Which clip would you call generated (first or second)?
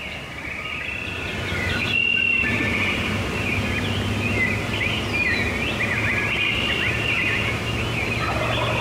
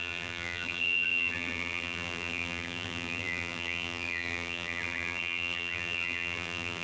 second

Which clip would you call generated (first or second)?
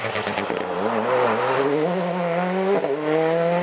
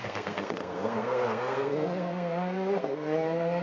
second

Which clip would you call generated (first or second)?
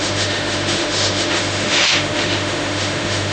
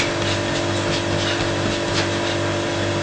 first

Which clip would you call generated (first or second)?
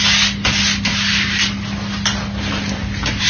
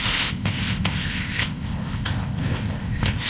second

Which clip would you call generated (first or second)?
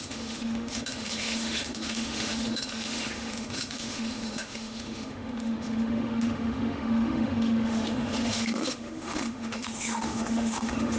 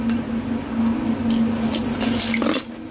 first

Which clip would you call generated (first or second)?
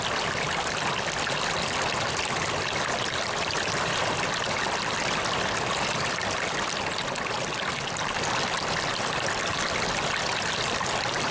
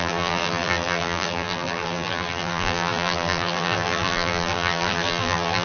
second